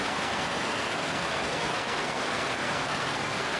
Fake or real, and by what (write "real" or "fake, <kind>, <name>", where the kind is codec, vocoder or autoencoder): fake, codec, SNAC